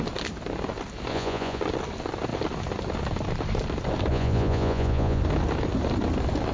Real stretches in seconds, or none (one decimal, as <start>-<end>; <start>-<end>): 0.0-1.1; 1.6-4.1; 5.2-6.5